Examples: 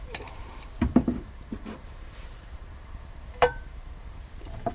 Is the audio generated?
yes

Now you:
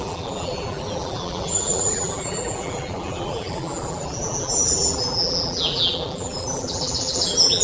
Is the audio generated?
yes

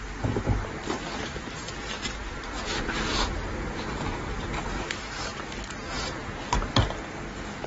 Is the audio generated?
yes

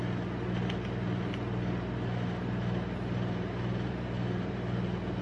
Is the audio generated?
no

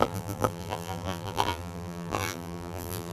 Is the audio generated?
yes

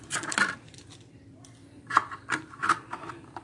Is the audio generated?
yes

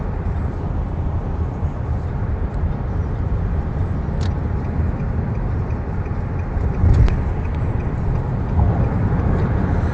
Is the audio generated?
yes